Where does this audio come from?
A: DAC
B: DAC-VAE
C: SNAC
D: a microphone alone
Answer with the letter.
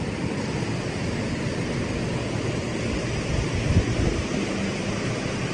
D